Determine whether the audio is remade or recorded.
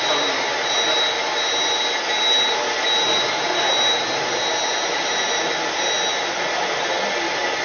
recorded